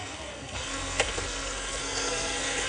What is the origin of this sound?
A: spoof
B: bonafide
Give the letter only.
A